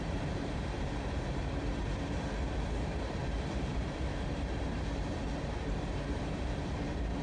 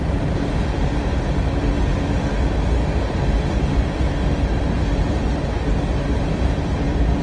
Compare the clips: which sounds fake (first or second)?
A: first